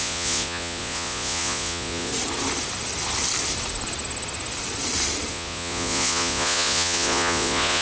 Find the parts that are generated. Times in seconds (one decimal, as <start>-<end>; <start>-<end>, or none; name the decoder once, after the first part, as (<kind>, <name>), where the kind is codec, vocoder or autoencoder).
0.0-2.1 (vocoder, Vocos); 5.3-7.8